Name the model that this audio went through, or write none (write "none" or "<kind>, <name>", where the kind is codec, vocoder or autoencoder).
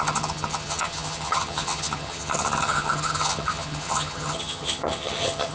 vocoder, HiFi-GAN